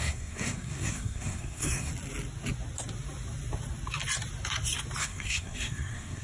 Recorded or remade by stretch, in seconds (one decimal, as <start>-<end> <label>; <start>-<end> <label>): 0.0-1.9 remade; 1.9-5.0 recorded; 5.0-6.2 remade